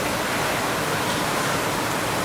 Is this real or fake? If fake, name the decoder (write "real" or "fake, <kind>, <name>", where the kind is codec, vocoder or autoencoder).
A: real